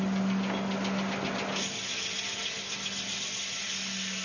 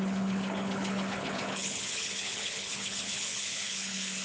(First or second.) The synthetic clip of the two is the second